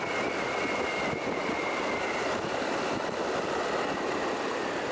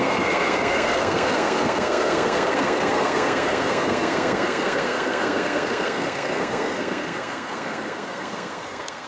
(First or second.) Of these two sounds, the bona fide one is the first